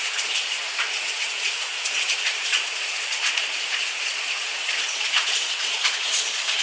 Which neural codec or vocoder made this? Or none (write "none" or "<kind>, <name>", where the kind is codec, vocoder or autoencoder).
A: vocoder, Vocos